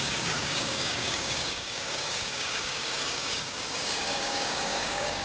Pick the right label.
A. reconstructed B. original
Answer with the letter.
A